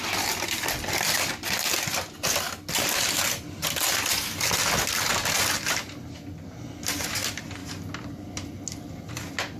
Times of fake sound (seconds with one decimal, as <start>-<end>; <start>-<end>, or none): none